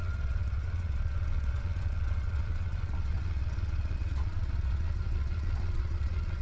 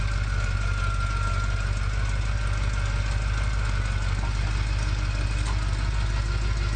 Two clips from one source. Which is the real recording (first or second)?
second